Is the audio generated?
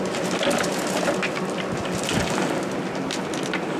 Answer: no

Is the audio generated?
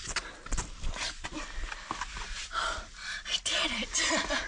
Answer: no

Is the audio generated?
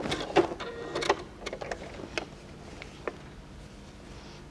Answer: no